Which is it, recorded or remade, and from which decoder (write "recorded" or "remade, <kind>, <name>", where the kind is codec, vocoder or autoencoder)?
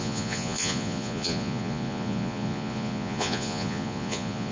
remade, vocoder, Vocos